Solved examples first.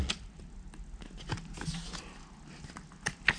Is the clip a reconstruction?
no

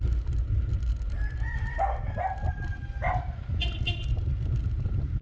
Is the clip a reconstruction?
no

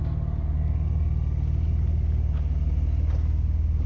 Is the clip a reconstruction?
no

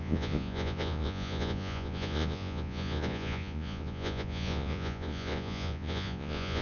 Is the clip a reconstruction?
yes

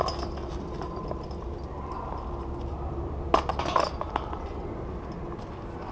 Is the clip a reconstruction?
no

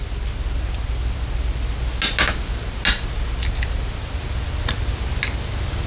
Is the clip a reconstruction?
no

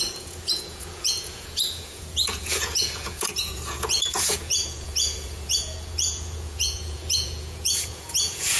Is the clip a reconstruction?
yes